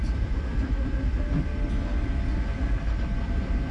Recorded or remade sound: recorded